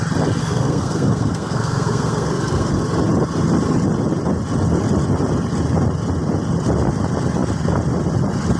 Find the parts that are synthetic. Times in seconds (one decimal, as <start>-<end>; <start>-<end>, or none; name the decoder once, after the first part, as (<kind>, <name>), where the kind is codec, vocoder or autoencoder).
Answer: 0.4-2.8 (codec, SNAC)